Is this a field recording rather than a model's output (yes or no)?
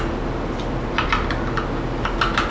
yes